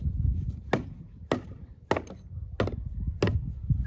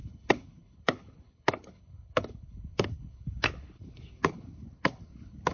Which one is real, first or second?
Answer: first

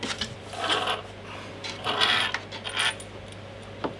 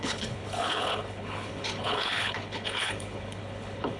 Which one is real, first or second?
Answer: first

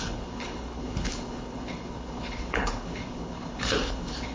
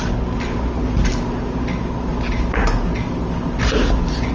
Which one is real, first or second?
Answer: second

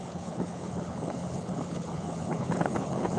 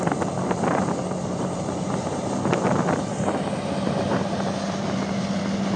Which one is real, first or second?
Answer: second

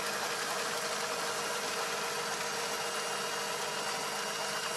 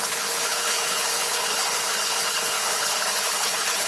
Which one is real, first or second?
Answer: first